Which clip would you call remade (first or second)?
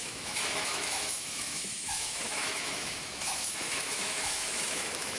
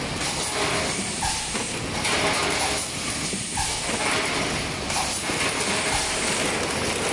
first